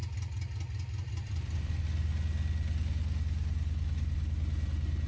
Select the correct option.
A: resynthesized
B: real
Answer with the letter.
B